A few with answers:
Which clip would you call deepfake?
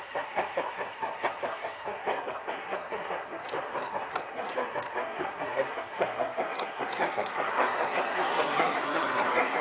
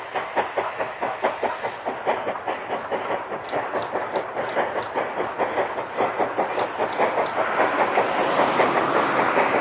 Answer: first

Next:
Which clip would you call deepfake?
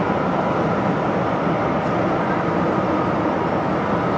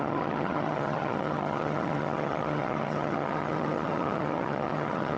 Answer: second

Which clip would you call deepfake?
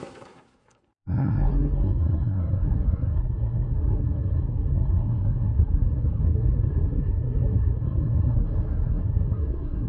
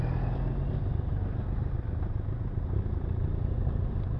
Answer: first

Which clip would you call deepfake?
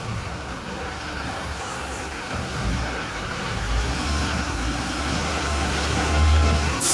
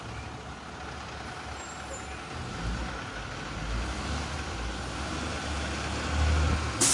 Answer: first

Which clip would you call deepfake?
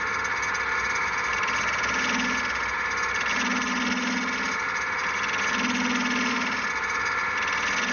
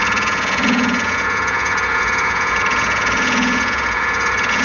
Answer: second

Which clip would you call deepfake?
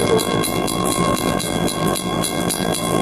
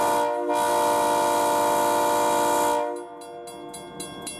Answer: first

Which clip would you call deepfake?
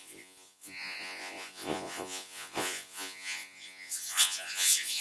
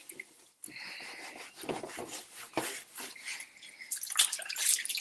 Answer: first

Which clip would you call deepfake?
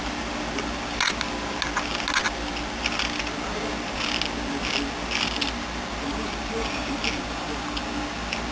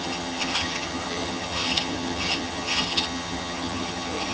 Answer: second